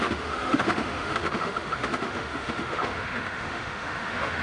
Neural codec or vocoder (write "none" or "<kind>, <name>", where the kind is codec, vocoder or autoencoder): autoencoder, DAC-VAE